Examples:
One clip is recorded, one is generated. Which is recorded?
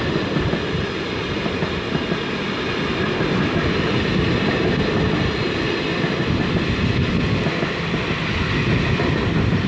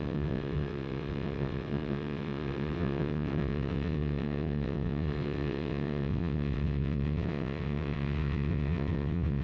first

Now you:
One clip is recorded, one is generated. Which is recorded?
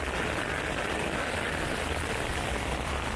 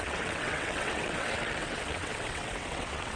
first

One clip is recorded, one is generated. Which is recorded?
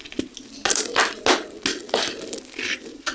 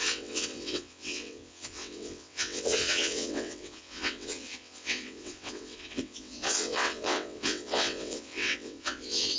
first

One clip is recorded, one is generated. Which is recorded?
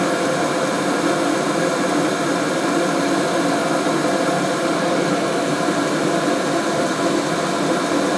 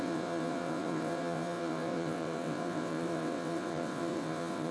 first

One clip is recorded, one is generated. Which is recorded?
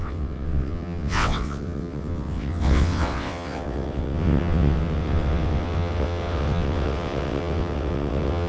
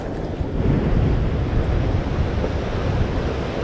second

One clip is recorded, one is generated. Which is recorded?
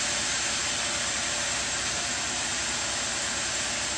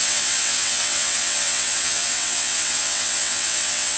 first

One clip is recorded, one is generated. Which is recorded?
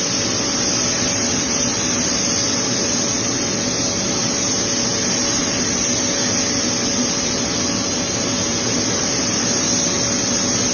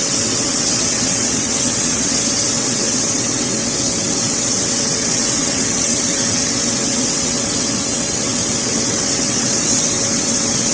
first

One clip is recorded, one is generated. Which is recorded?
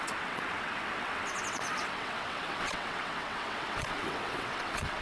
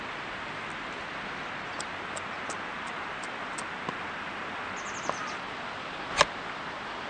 second